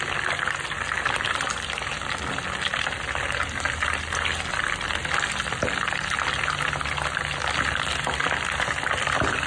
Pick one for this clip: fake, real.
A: real